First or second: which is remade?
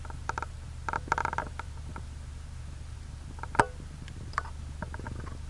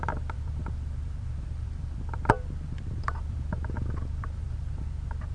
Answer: second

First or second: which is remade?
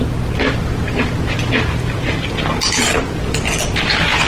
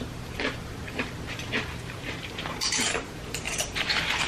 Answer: second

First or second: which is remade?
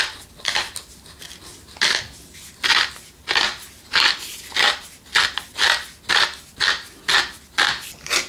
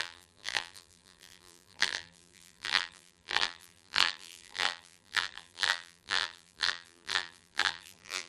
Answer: second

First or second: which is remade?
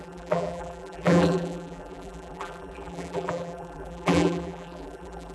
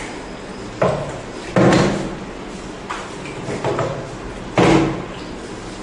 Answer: first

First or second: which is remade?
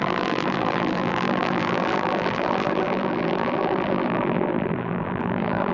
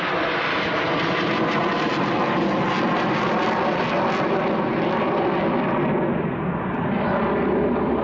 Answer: first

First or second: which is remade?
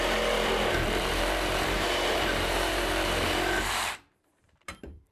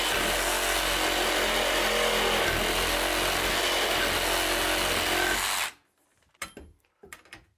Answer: first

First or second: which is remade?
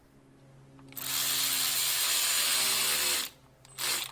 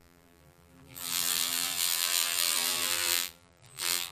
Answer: second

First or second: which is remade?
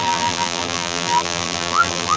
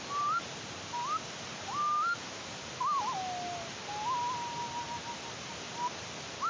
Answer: first